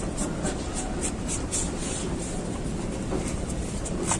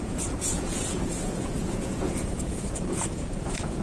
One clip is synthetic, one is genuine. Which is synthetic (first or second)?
second